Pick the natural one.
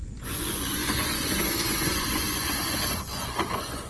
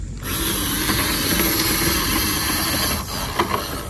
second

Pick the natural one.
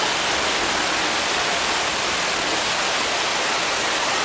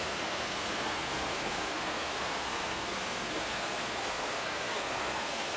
first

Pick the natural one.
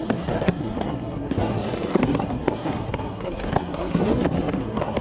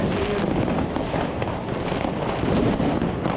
second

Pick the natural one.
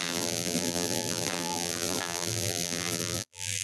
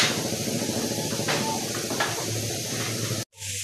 second